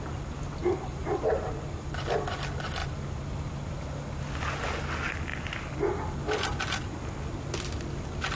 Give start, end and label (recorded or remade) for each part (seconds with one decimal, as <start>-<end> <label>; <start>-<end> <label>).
0.0-8.4 recorded